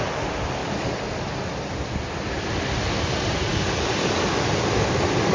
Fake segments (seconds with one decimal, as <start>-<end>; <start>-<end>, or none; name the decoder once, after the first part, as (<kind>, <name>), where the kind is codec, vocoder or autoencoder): none